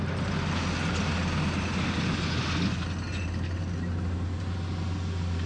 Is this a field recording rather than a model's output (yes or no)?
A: yes